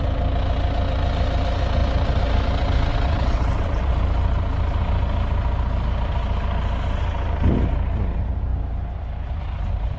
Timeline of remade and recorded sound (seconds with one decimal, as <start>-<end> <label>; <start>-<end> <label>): 0.0-2.9 recorded; 2.9-3.9 remade; 3.9-10.0 recorded